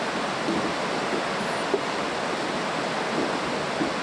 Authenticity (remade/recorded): recorded